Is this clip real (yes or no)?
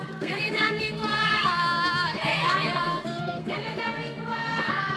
no